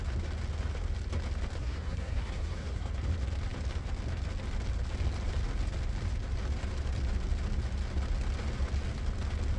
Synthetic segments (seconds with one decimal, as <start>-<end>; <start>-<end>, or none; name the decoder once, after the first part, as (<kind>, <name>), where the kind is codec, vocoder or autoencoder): 1.6-2.9 (codec, SNAC)